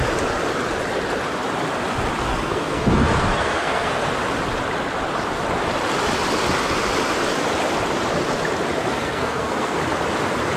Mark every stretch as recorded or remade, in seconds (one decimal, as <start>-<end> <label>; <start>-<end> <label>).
0.0-2.3 recorded; 2.3-4.1 remade; 4.1-8.8 recorded; 8.8-9.8 remade; 9.8-10.6 recorded